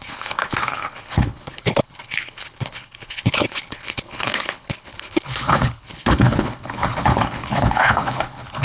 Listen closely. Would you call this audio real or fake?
fake